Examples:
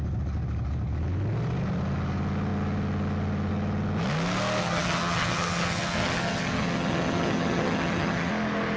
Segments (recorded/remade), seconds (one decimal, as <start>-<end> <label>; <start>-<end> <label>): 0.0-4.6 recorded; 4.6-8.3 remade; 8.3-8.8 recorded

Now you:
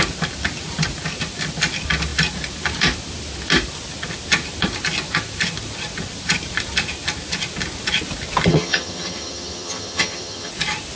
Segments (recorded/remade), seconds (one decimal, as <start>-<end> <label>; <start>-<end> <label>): 0.0-8.5 recorded; 8.5-10.5 remade; 10.5-10.9 recorded

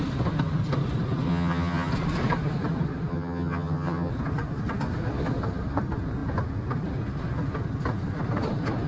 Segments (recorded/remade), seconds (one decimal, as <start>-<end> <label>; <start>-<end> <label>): 0.0-1.3 recorded; 1.3-1.9 remade; 1.9-3.1 recorded; 3.1-4.1 remade; 4.1-8.9 recorded